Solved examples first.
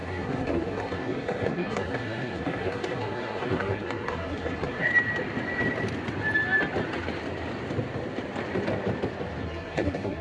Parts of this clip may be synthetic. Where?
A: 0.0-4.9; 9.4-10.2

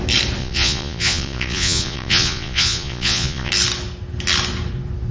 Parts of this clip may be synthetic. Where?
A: 0.4-3.5

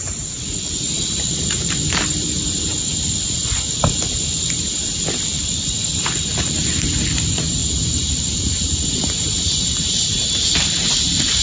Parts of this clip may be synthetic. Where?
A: 0.0-2.9; 6.5-11.4

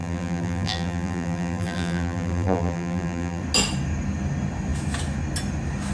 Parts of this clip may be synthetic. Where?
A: 0.0-3.4

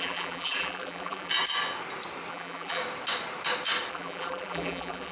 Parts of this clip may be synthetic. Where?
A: 0.0-1.3; 2.3-2.8; 3.9-5.1

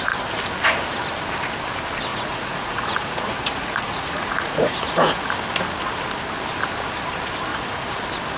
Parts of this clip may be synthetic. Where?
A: 2.1-5.3; 7.5-8.0